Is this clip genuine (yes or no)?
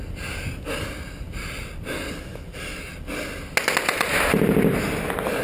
yes